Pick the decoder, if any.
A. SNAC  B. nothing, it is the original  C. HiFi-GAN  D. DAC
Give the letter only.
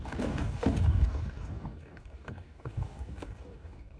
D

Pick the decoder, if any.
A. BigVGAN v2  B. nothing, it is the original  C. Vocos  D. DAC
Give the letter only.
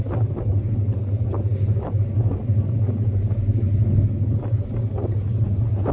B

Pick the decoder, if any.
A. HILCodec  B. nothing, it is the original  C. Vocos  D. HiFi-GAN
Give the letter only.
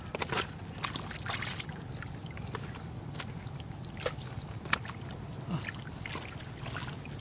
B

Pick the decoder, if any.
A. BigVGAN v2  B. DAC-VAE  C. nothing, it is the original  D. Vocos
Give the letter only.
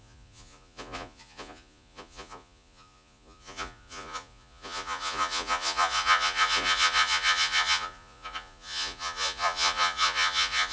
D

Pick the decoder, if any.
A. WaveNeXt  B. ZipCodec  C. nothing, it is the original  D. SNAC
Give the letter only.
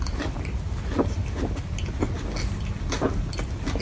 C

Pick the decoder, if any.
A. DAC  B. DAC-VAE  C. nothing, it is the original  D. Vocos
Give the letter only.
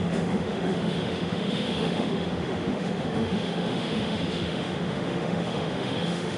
B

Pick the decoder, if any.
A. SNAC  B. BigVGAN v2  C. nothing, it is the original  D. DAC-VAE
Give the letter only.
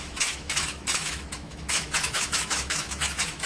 D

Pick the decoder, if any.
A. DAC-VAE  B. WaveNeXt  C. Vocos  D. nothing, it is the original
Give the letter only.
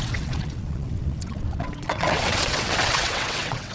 B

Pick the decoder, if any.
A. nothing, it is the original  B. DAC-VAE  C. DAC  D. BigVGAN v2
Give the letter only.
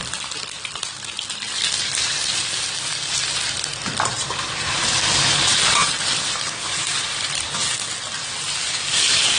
A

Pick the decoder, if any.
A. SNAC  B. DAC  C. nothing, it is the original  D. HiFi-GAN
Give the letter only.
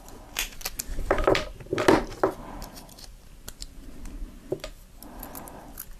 C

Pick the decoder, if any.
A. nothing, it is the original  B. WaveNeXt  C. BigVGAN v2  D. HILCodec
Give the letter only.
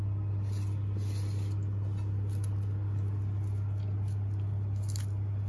A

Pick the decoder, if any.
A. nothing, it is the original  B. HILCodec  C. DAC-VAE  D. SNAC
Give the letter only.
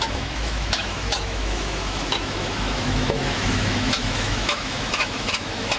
C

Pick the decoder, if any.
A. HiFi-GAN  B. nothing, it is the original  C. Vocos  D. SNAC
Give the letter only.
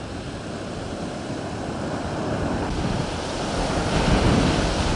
B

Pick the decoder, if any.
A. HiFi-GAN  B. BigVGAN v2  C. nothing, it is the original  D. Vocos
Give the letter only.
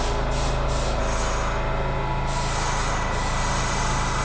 C